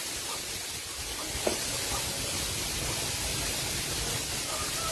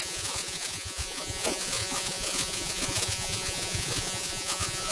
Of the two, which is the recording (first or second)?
first